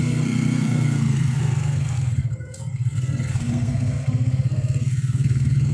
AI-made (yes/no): yes